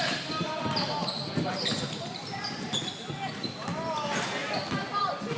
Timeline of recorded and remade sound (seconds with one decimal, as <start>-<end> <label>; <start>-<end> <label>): 0.0-5.4 recorded